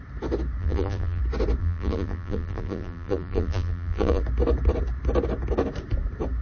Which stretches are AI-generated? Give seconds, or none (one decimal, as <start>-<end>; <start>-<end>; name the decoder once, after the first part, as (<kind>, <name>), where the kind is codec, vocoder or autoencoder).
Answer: 0.6-1.2 (vocoder, BigVGAN v2); 1.6-4.2